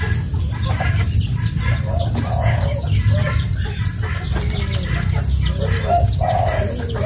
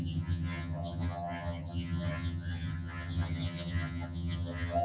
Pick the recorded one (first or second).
first